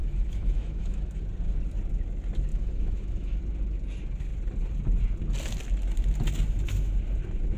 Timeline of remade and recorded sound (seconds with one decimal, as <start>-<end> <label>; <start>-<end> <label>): 0.0-1.2 remade; 1.2-2.5 recorded; 2.5-3.4 remade; 3.4-7.6 recorded

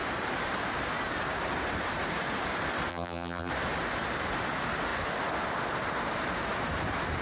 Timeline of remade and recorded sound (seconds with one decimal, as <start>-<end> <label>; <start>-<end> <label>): 0.0-2.9 recorded; 2.9-3.5 remade; 3.5-7.2 recorded

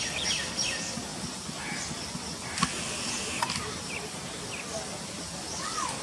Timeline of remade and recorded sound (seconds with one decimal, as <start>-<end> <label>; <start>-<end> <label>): 0.0-6.0 recorded

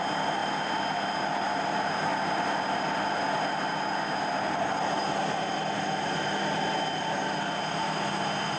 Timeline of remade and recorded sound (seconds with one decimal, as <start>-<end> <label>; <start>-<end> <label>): 0.0-8.6 recorded

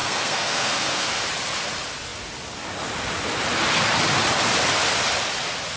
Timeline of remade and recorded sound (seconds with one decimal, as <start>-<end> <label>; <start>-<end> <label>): 0.0-1.2 remade; 1.2-5.8 recorded

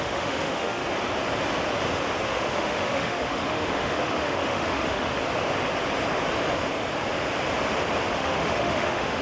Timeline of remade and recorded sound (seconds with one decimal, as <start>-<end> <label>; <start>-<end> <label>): 0.0-0.8 remade; 0.8-2.3 recorded; 2.3-5.1 remade; 5.1-8.1 recorded; 8.1-9.2 remade